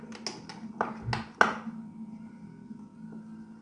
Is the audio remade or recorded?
recorded